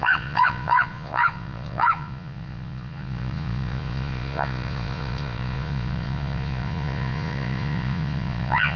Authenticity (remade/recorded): remade